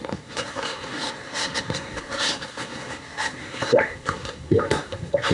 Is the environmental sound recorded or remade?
remade